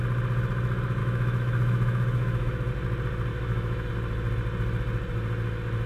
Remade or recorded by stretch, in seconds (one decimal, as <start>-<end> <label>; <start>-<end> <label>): 0.0-1.0 recorded; 1.0-2.7 remade; 2.7-3.3 recorded; 3.3-3.9 remade; 3.9-5.9 recorded